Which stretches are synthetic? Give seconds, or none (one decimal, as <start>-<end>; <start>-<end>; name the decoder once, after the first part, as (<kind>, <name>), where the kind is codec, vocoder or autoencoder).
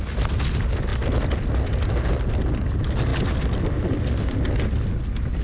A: none